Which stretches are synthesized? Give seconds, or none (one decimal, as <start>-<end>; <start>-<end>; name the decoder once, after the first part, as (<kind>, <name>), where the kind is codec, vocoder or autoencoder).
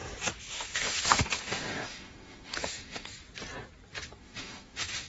0.5-3.1 (autoencoder, DAC-VAE); 4.2-5.1